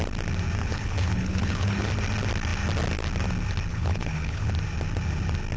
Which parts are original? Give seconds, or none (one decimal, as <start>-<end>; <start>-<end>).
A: 0.0-0.6; 1.9-3.7; 4.5-5.6